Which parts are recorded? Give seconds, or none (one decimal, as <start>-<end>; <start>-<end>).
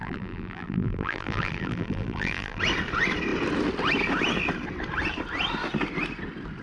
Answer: 2.6-6.6